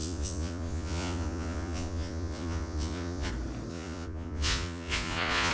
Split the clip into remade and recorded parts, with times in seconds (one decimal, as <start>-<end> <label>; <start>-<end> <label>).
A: 0.0-3.3 remade; 3.3-3.7 recorded; 3.7-5.5 remade